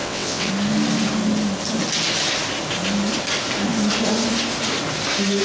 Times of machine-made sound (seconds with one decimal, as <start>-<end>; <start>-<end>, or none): 0.0-0.5